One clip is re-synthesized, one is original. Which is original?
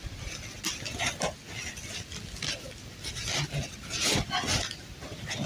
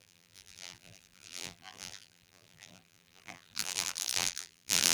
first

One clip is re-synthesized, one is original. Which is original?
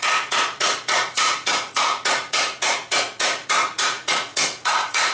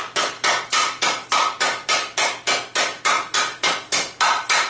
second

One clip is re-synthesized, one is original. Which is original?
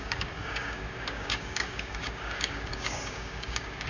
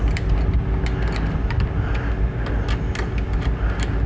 second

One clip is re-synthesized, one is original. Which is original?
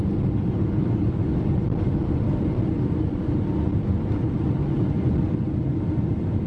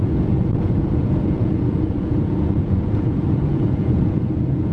first